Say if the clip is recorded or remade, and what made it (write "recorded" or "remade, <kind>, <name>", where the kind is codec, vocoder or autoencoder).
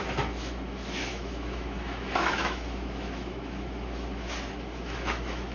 remade, autoencoder, DAC-VAE